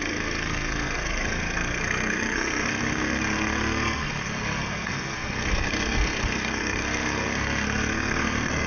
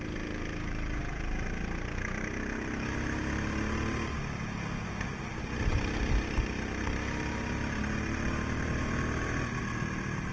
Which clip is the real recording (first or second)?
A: second